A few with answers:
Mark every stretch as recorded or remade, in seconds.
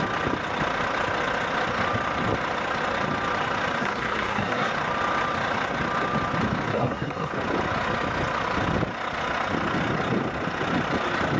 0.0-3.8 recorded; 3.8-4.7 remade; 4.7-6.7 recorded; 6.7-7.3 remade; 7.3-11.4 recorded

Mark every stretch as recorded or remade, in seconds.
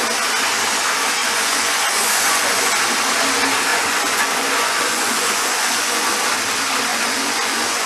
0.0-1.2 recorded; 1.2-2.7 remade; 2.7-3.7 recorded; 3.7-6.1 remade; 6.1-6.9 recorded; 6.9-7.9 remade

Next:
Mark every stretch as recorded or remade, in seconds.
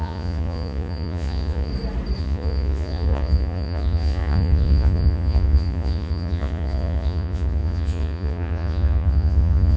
0.0-1.7 remade; 1.7-2.2 recorded; 2.2-9.8 remade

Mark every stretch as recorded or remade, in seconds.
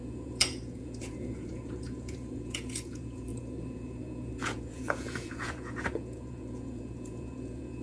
0.0-7.8 remade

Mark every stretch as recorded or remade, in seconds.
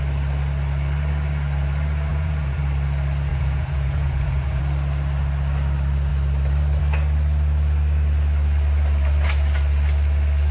0.0-2.1 recorded; 2.1-2.6 remade; 2.6-3.3 recorded; 3.3-4.6 remade; 4.6-10.5 recorded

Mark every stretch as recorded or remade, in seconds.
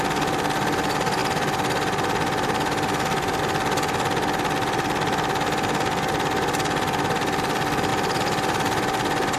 0.0-9.4 recorded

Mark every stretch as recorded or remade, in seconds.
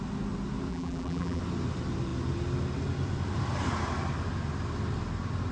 0.0-0.7 recorded; 0.7-1.4 remade; 1.4-5.5 recorded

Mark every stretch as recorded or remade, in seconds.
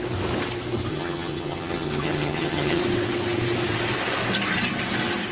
0.0-0.9 recorded; 0.9-2.8 remade; 2.8-5.3 recorded